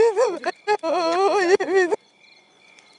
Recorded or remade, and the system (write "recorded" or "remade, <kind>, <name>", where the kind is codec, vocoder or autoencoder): remade, vocoder, Vocos